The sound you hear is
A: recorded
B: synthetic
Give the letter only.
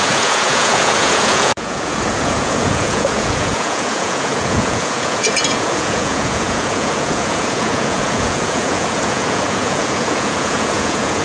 B